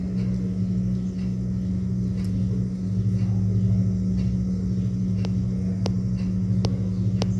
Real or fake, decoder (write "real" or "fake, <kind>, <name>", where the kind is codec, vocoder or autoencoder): real